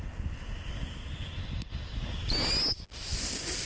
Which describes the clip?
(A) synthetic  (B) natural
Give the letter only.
B